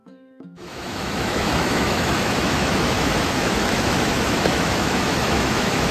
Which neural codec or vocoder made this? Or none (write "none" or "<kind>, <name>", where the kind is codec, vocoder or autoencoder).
autoencoder, DAC-VAE